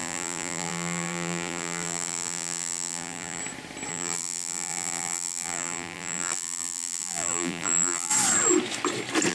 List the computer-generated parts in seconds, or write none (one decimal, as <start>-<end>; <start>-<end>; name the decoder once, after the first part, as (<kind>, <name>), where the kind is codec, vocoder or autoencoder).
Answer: 0.0-3.4 (vocoder, BigVGAN v2); 3.9-8.1